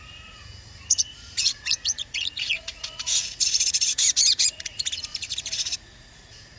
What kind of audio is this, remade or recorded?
remade